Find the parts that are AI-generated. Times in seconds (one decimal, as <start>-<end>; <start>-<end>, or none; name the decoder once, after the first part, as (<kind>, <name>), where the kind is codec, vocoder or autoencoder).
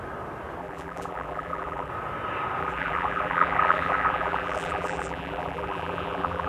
0.6-1.9 (vocoder, BigVGAN v2); 2.6-6.5